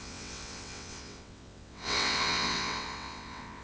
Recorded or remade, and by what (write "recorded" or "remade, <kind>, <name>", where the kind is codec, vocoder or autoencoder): remade, vocoder, WaveNeXt